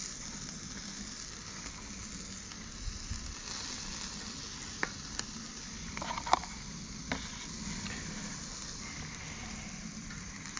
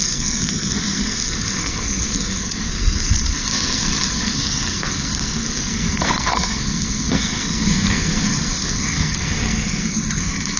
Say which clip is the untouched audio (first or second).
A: first